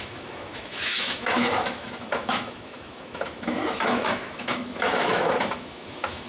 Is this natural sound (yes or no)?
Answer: no